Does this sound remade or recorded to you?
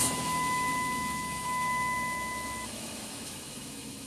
remade